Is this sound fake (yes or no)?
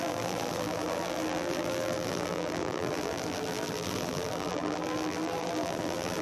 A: yes